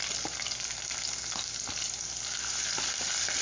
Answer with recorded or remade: recorded